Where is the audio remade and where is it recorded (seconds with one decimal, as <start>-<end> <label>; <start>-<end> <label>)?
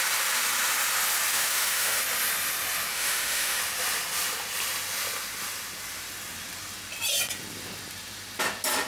0.0-1.3 recorded; 1.3-2.0 remade; 2.0-2.9 recorded; 2.9-3.6 remade; 3.6-8.9 recorded